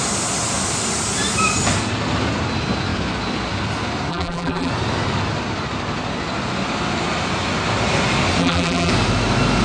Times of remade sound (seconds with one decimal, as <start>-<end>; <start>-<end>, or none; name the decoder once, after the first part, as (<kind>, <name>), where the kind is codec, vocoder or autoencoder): 4.1-4.7 (vocoder, BigVGAN v2); 8.4-8.9